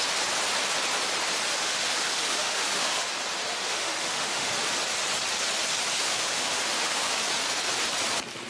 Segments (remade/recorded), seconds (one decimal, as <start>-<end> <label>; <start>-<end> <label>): 0.0-1.5 recorded; 1.5-3.1 remade; 3.1-3.5 recorded; 3.5-4.5 remade; 4.5-6.0 recorded; 6.0-7.3 remade; 7.3-8.5 recorded